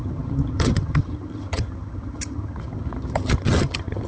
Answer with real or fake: fake